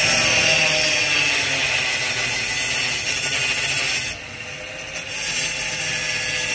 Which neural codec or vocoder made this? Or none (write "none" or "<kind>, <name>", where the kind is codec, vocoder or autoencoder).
none